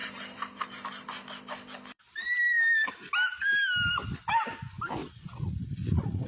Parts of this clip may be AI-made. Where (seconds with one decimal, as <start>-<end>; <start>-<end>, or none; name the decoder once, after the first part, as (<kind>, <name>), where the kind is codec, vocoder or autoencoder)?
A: 5.0-6.3 (vocoder, Vocos)